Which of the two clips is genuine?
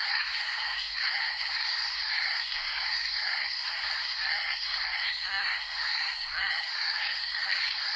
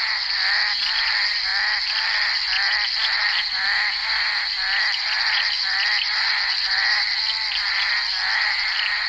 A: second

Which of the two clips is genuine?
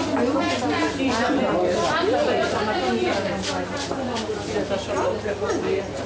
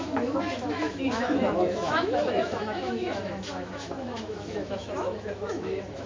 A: first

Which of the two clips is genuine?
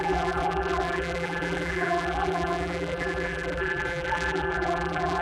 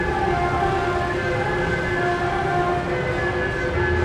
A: second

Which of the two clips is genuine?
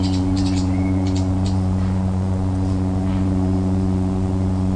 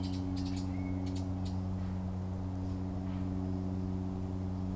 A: second